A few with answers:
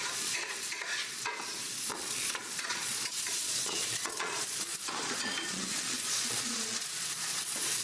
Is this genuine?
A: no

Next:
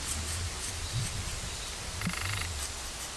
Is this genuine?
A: yes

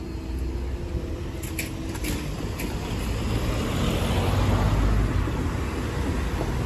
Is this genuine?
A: yes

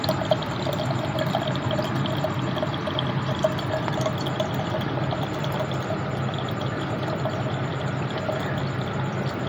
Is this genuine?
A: yes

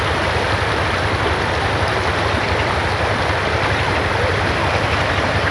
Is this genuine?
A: yes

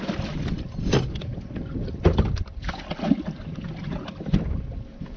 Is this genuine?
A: yes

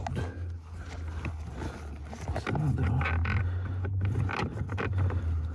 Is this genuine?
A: yes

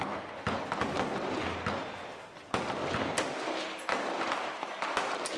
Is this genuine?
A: yes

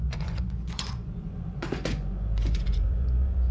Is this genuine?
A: no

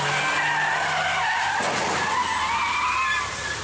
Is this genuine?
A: yes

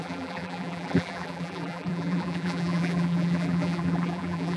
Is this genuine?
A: no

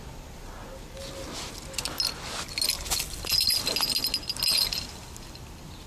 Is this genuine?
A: yes